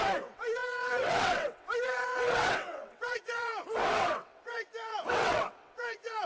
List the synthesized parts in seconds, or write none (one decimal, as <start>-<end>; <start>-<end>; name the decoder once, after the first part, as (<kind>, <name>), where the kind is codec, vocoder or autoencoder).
0.0-6.3 (vocoder, WaveNeXt)